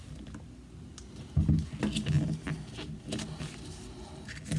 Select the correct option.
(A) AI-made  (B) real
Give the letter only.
B